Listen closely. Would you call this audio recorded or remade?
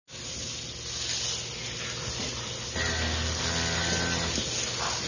recorded